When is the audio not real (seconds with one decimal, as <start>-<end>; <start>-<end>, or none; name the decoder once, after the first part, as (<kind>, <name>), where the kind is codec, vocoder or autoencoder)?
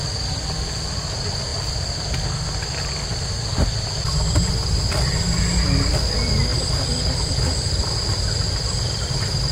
none